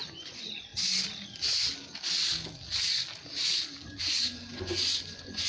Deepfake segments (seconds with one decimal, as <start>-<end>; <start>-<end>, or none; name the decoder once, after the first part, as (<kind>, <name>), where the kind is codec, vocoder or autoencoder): 0.0-0.7 (vocoder, Vocos); 4.0-5.5

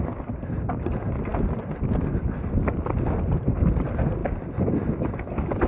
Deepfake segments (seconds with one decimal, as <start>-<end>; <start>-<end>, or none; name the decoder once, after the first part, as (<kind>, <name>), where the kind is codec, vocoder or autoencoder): none

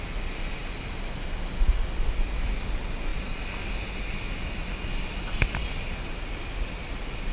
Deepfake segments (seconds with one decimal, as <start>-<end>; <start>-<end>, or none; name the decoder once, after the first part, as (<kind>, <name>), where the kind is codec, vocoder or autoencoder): none

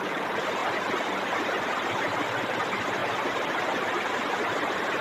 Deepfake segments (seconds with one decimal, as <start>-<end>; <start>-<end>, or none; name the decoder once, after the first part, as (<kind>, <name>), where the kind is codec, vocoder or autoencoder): 3.0-3.6 (vocoder, BigVGAN v2)